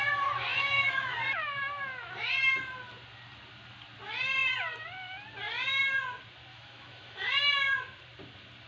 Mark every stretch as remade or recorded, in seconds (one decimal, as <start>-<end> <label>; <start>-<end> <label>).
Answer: 0.0-0.5 recorded; 0.5-1.1 remade; 1.1-6.5 recorded; 6.5-7.3 remade; 7.3-8.7 recorded